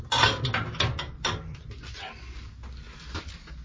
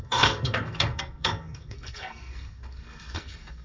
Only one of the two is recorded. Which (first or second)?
first